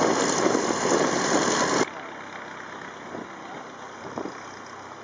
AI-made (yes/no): no